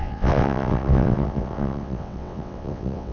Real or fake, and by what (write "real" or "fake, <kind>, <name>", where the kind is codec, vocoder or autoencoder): fake, vocoder, WaveNeXt